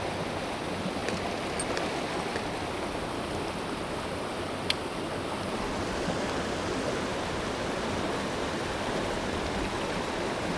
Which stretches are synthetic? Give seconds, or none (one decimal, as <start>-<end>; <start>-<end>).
none

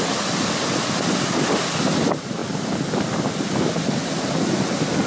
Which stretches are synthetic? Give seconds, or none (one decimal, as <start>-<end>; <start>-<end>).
none

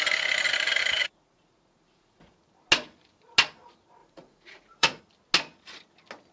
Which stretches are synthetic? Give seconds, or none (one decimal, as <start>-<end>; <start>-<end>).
1.0-2.4; 4.0-5.0

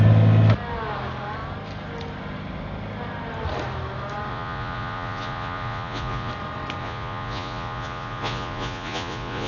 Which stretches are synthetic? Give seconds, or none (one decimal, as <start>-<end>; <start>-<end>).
4.3-6.3; 6.8-9.5

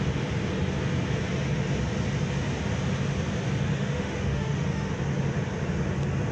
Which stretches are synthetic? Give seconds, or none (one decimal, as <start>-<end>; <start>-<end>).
3.7-4.9

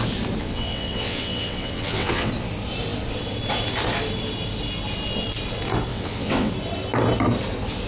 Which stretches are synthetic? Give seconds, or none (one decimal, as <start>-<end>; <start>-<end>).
0.4-2.3; 5.9-6.5